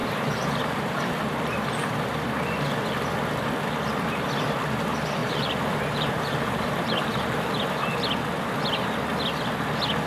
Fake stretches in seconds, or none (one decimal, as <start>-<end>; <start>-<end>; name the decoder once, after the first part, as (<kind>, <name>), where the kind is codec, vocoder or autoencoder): 0.0-1.0 (vocoder, BigVGAN v2); 5.2-7.8